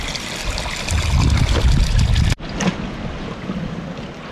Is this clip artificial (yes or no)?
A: no